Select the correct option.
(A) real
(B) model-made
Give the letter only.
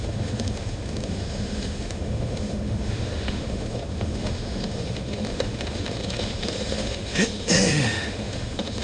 B